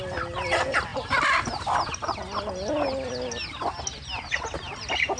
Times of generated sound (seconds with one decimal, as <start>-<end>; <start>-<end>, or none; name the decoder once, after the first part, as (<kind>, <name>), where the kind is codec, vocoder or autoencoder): none